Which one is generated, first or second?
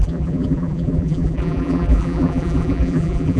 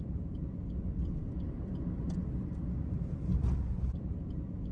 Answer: first